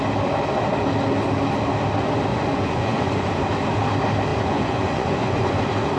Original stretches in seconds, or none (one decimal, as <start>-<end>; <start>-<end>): 0.0-2.3; 3.3-4.3; 5.6-6.0